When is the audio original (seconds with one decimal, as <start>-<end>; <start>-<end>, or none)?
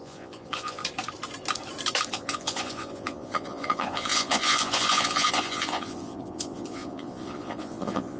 0.8-2.1